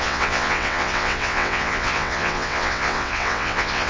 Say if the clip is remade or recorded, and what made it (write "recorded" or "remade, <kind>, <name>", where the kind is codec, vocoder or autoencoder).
remade, vocoder, WaveNeXt